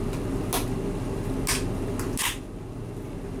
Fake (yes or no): no